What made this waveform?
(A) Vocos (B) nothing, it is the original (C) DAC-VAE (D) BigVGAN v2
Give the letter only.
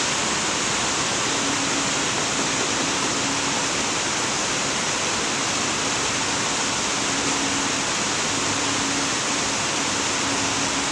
B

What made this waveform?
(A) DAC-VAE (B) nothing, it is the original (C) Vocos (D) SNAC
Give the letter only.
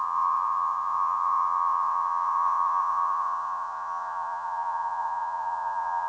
C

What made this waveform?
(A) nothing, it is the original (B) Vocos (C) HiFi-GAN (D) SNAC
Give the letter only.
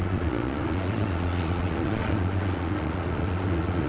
B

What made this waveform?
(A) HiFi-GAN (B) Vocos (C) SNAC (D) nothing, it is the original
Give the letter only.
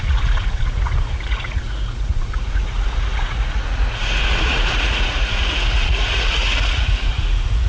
B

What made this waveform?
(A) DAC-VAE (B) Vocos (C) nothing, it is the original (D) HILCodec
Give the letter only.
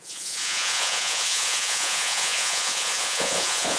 B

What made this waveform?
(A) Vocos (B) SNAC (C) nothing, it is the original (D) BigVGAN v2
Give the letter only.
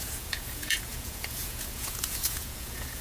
A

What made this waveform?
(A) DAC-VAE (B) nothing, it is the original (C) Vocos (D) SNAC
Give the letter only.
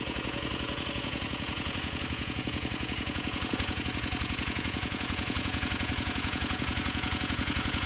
C